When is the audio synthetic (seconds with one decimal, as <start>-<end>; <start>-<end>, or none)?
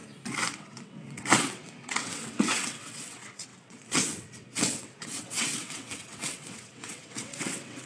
0.5-7.9